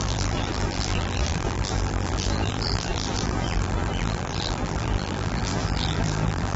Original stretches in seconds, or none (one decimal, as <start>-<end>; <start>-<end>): none